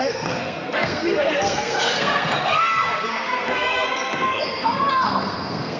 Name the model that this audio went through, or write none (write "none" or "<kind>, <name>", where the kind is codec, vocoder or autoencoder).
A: codec, SNAC